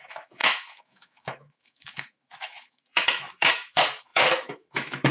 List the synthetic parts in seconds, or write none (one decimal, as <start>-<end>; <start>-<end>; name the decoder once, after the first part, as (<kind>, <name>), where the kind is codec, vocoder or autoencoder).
0.0-5.1 (autoencoder, DAC-VAE)